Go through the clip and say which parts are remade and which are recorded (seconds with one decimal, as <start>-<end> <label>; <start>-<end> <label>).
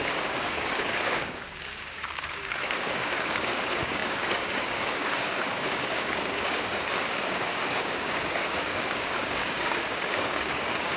0.0-11.0 remade